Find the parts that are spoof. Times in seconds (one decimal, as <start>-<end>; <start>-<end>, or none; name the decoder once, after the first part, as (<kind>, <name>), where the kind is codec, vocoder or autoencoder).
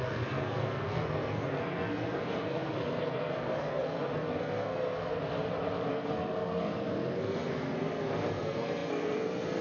0.0-5.2 (codec, SNAC); 5.9-9.6